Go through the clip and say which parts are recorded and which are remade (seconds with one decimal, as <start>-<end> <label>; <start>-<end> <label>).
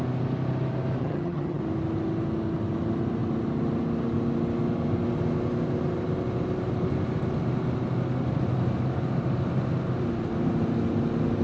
0.0-1.0 recorded; 1.0-1.6 remade; 1.6-11.4 recorded